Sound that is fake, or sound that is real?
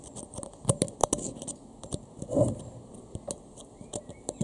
real